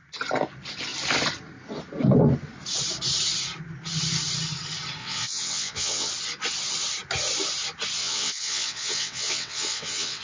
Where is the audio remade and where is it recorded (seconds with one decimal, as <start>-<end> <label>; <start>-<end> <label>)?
0.0-5.0 recorded; 5.0-6.1 remade; 6.1-8.0 recorded; 8.0-10.2 remade